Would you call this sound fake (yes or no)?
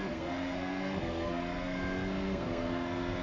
yes